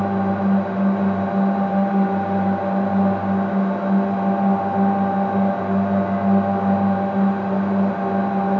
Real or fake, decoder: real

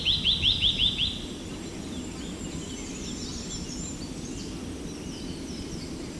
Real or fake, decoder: real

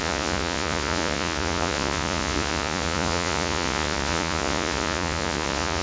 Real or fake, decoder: fake, vocoder, Vocos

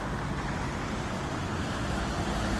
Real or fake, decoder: real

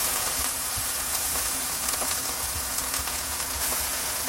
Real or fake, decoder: fake, vocoder, Vocos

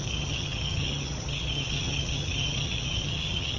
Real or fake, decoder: fake, vocoder, HiFi-GAN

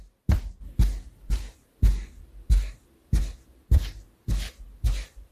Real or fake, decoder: real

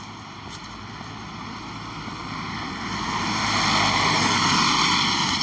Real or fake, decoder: real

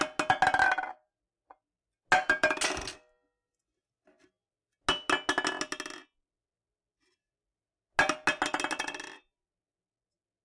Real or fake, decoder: real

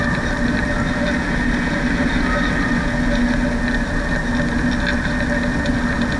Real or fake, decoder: real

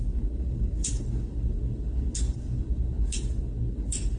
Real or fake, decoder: fake, codec, HILCodec